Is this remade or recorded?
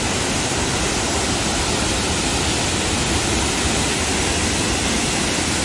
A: recorded